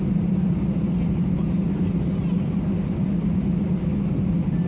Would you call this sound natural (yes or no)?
yes